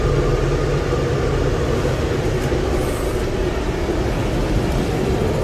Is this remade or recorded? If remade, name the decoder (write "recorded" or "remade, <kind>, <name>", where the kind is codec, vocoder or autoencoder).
recorded